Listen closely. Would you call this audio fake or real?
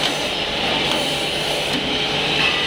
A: real